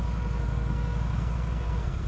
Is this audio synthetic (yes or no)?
yes